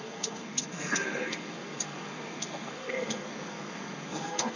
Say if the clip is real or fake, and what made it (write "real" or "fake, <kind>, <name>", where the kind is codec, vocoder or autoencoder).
fake, codec, SNAC